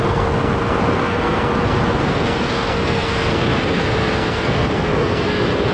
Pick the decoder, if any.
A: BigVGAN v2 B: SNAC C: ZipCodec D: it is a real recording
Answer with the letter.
B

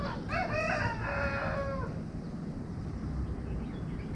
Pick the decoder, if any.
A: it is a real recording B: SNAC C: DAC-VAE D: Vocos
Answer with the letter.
A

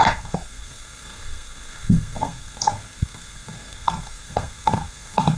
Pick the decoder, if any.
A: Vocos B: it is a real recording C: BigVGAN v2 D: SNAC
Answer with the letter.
D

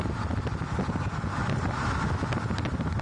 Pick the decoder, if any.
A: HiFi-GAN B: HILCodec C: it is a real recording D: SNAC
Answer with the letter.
C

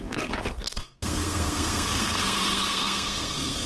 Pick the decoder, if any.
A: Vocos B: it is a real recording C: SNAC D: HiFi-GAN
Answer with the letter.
C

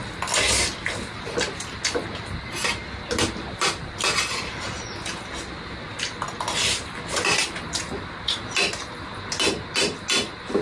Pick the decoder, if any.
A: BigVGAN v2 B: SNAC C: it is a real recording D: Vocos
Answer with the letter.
C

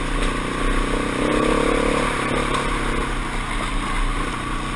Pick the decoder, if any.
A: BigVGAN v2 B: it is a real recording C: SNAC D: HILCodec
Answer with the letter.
B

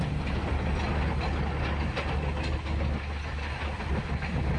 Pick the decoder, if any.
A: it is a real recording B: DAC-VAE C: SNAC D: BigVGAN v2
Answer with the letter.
A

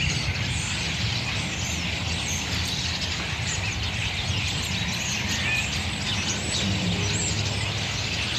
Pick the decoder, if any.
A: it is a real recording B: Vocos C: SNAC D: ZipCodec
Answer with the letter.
A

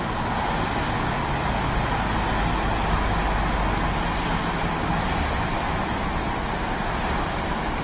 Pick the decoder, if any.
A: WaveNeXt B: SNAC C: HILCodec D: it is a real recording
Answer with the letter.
D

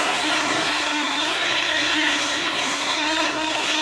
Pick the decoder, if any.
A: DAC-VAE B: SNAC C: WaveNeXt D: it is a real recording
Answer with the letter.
B